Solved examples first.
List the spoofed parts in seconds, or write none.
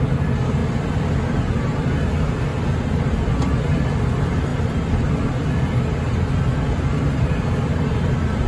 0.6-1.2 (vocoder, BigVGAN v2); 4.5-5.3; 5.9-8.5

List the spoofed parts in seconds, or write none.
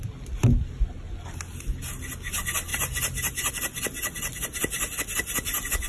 2.7-3.5 (vocoder, BigVGAN v2)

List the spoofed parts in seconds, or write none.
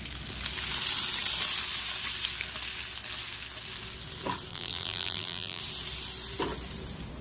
4.5-5.6 (vocoder, BigVGAN v2)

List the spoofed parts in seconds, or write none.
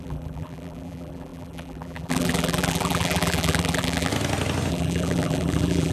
0.0-4.1 (vocoder, BigVGAN v2); 4.7-5.9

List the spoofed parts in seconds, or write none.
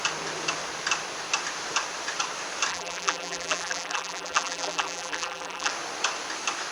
2.7-5.7 (vocoder, BigVGAN v2)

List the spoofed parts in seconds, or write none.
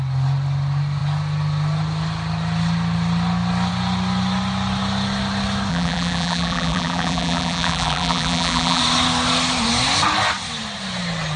5.7-8.8 (vocoder, BigVGAN v2)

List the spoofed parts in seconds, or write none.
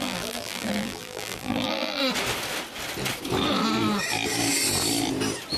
0.0-2.0 (vocoder, BigVGAN v2)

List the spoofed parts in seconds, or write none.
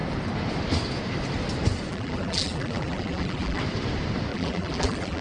1.9-3.6 (vocoder, BigVGAN v2); 4.3-5.2